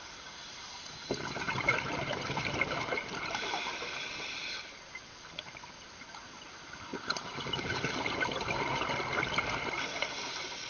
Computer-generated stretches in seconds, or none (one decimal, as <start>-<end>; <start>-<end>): 0.9-6.0; 6.9-9.4